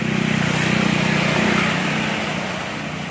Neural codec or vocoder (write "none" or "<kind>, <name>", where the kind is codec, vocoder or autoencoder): none